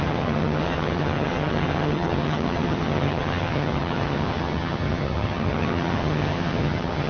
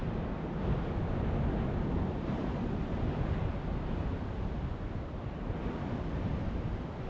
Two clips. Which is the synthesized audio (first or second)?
first